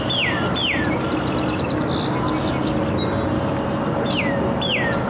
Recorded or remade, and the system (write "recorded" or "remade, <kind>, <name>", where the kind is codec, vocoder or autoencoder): recorded